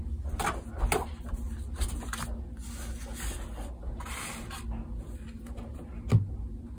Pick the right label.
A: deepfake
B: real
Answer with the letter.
B